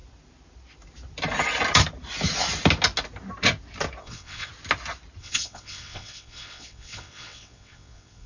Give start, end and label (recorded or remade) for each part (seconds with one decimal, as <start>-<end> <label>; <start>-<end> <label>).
0.0-4.0 recorded; 4.0-4.5 remade; 4.5-5.2 recorded; 5.2-8.3 remade

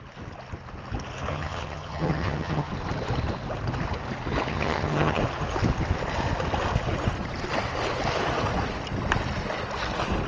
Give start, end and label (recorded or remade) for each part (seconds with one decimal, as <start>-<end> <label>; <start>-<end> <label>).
0.0-1.3 recorded; 1.3-2.7 remade; 2.7-4.5 recorded; 4.5-5.2 remade; 5.2-10.3 recorded

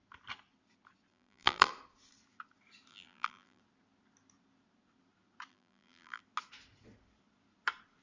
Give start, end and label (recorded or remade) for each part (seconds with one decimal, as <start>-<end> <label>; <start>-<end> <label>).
0.0-1.1 recorded; 1.1-1.7 remade; 1.7-2.9 recorded; 2.9-3.6 remade; 3.6-5.5 recorded; 5.5-6.2 remade; 6.2-8.0 recorded